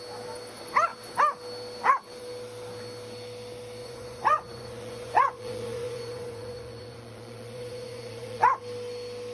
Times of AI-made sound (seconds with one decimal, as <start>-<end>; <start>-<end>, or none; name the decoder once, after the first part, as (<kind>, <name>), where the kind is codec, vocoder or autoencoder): 3.8-8.6 (vocoder, Vocos)